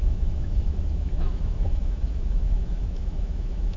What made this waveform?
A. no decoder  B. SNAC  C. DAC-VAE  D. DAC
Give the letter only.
C